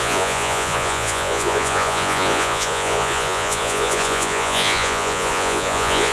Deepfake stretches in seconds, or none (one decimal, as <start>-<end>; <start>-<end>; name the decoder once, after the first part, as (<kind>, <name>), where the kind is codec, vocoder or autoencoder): 0.0-6.1 (vocoder, Vocos)